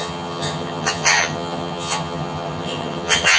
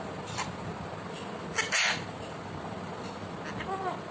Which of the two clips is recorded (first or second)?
second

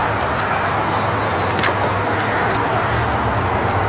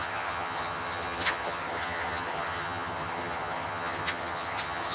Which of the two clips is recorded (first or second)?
first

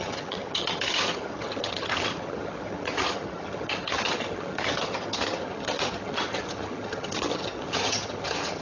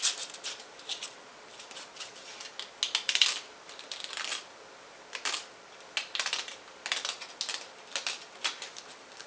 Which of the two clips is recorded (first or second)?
second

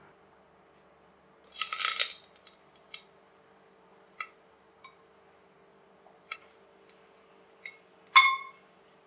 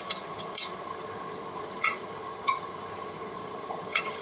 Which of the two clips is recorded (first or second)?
first